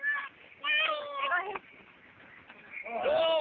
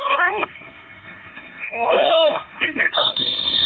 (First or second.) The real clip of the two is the first